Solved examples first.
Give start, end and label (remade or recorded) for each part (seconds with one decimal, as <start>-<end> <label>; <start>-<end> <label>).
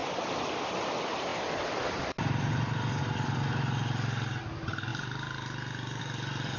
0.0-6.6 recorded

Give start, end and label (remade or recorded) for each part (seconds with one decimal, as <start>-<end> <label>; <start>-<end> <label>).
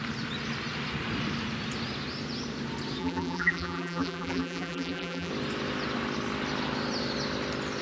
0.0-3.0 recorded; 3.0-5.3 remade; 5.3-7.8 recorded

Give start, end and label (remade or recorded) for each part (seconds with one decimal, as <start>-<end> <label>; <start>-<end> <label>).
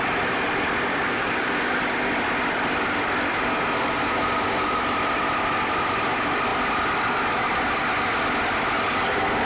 0.0-0.9 recorded; 0.9-1.8 remade; 1.8-9.5 recorded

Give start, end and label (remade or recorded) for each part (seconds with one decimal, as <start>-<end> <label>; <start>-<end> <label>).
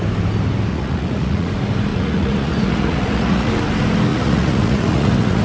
0.0-0.7 recorded; 0.7-1.5 remade; 1.5-1.9 recorded; 1.9-3.5 remade; 3.5-4.1 recorded; 4.1-5.4 remade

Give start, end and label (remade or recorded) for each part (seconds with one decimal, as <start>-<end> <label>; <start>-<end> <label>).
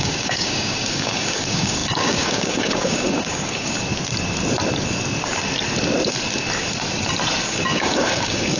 0.0-3.7 remade; 3.7-7.5 recorded; 7.5-8.6 remade